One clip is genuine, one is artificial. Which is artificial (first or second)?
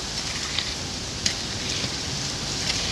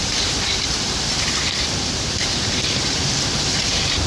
second